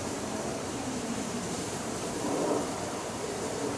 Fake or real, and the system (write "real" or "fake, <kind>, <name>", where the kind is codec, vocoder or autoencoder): fake, vocoder, BigVGAN v2